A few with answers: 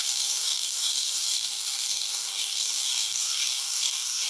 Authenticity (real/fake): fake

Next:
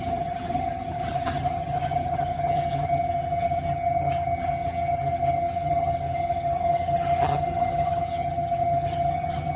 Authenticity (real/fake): fake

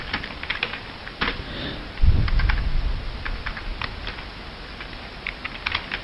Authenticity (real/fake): real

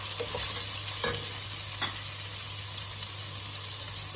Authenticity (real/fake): real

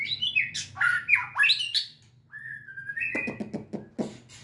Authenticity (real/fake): real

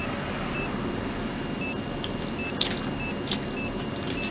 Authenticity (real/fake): real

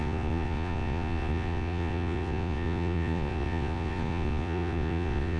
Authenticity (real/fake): fake